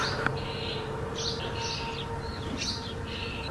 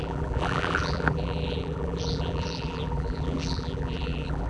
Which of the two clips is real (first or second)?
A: first